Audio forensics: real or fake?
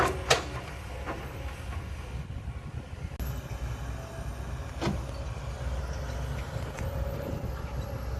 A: real